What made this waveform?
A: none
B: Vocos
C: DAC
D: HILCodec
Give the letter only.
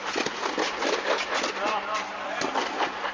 A